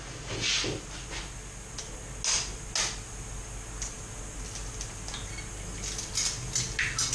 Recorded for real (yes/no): yes